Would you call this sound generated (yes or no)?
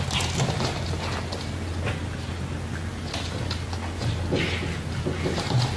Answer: no